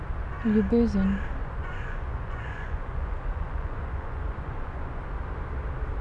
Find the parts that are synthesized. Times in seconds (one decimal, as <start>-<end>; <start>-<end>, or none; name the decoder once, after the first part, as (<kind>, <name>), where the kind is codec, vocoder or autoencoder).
1.4-5.0 (vocoder, Vocos)